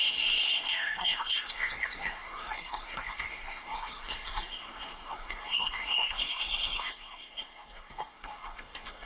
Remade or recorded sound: remade